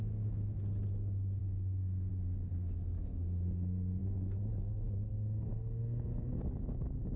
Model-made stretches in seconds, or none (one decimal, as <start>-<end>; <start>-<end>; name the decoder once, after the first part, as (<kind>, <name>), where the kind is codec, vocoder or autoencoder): 0.0-0.6 (autoencoder, DAC-VAE); 1.4-2.1; 4.0-5.1